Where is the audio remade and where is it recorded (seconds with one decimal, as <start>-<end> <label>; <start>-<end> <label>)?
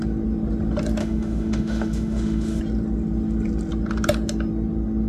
0.0-1.0 recorded; 1.0-2.6 remade; 2.6-5.1 recorded